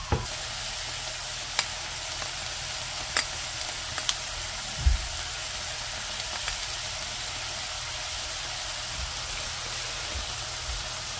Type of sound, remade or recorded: recorded